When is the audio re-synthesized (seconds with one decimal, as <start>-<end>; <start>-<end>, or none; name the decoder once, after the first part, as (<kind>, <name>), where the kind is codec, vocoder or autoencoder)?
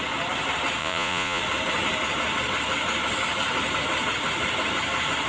0.8-1.4 (vocoder, Vocos)